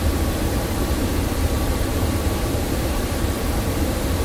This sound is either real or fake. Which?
fake